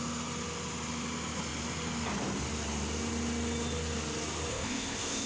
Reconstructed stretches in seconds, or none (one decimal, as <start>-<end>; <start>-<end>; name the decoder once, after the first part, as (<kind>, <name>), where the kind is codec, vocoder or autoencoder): 4.5-5.3 (codec, ZipCodec)